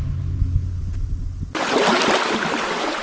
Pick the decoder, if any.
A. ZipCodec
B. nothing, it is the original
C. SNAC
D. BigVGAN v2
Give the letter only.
B